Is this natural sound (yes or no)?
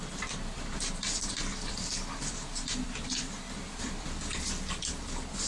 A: no